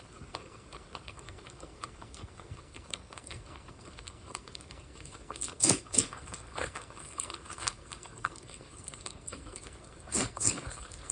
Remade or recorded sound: remade